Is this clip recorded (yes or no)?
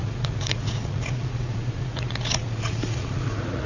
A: no